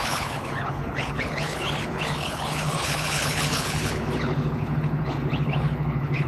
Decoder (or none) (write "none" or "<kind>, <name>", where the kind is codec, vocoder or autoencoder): codec, HILCodec